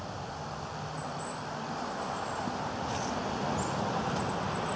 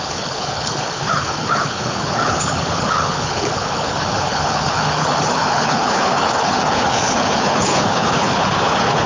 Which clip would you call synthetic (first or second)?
second